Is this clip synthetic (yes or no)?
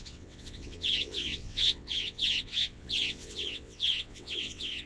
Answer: yes